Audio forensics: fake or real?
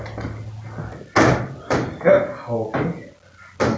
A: real